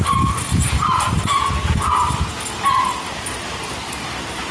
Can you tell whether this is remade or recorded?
recorded